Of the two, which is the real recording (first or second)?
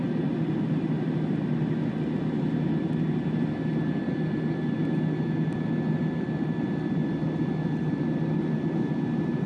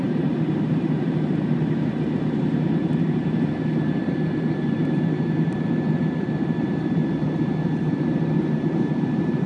first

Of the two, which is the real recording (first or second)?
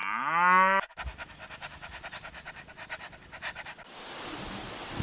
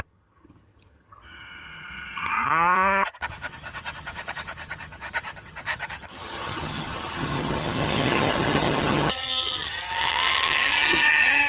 first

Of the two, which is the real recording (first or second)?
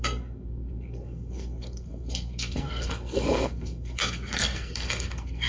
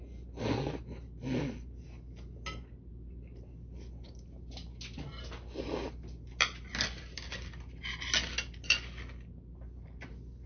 second